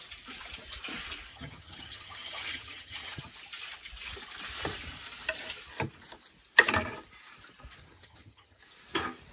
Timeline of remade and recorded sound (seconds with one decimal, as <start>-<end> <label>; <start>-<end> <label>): 0.0-1.3 recorded; 1.3-3.3 remade; 3.3-7.8 recorded; 7.8-8.6 remade; 8.6-9.3 recorded